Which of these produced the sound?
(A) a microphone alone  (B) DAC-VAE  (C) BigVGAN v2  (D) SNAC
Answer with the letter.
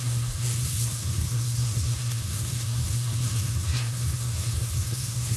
D